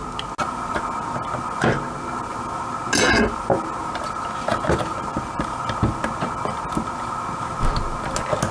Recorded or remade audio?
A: recorded